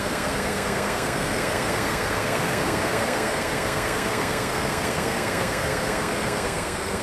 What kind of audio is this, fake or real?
fake